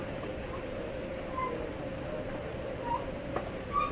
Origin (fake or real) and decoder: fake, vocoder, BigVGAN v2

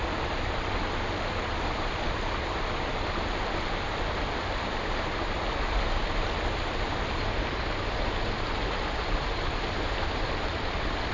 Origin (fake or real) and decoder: real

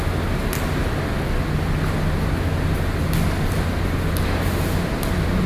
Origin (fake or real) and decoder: real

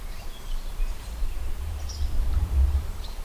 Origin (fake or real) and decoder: fake, vocoder, BigVGAN v2